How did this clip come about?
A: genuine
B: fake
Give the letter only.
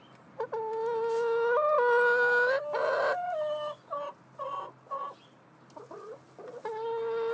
A